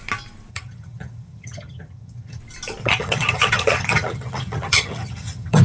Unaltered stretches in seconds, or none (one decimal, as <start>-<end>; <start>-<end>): 0.0-0.5; 2.4-2.8